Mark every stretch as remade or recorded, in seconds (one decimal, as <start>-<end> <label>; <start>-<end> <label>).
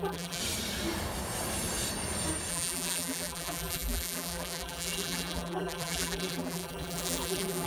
0.0-0.4 remade; 0.4-2.5 recorded; 2.5-7.7 remade